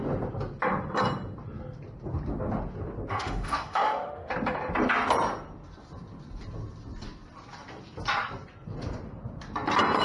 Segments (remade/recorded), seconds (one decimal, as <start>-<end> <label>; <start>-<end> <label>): 0.0-3.1 recorded; 3.1-4.3 remade; 4.3-10.0 recorded